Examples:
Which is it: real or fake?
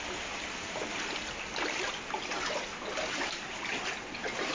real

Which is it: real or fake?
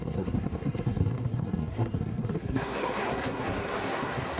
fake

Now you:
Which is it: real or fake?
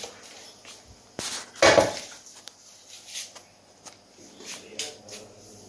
real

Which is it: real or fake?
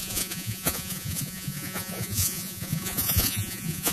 fake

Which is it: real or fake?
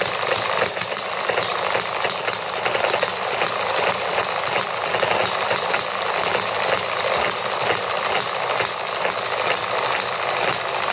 fake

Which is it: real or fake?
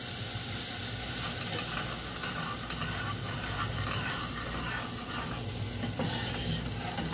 real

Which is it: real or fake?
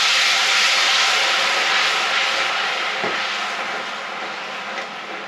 real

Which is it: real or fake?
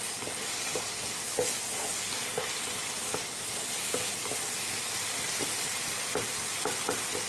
real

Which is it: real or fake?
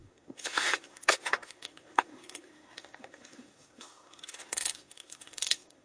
fake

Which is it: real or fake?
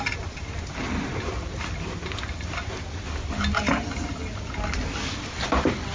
real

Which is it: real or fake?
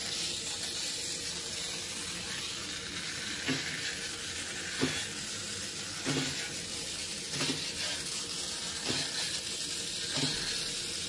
real